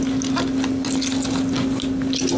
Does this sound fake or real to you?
real